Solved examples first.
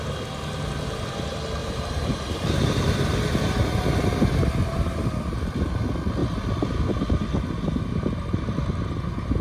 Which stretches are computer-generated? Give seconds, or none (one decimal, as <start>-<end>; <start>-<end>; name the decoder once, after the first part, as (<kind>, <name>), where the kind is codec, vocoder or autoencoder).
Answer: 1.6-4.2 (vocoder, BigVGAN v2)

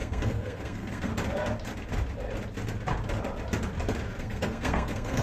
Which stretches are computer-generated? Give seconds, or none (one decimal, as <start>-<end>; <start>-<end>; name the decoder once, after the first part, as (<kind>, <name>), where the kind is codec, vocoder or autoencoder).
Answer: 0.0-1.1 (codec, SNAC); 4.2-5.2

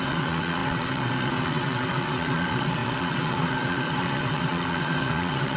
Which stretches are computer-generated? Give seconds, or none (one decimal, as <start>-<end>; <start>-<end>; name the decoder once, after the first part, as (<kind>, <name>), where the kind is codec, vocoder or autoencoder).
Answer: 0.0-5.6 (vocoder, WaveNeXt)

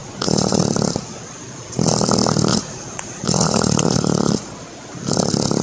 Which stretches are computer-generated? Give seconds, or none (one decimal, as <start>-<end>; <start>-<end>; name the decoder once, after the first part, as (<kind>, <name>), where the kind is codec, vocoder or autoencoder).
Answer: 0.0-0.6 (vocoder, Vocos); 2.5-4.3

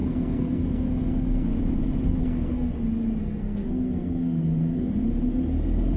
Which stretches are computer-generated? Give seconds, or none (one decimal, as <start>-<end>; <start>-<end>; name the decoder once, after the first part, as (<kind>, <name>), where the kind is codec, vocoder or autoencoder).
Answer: 0.0-1.5 (codec, SNAC); 2.2-2.8; 3.2-4.9